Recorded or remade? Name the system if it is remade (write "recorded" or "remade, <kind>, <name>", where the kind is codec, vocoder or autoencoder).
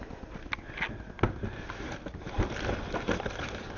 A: recorded